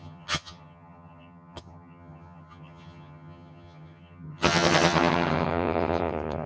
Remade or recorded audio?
remade